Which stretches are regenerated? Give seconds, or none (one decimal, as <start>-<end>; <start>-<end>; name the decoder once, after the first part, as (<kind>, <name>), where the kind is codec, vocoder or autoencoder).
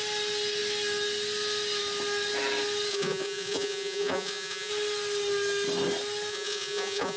2.9-4.7 (vocoder, Vocos); 6.3-7.2